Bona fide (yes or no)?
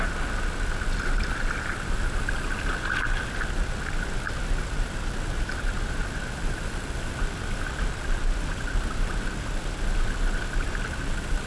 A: yes